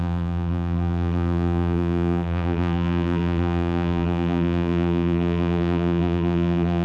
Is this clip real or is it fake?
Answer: fake